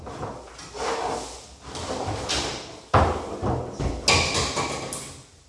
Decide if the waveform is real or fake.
real